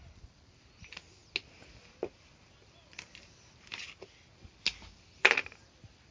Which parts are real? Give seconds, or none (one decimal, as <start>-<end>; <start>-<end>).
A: 0.0-6.1